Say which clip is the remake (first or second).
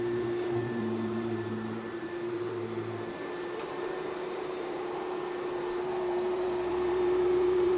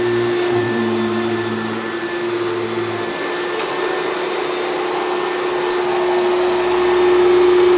first